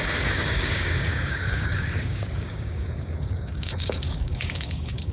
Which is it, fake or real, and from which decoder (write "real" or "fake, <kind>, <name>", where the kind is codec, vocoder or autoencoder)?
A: fake, codec, DAC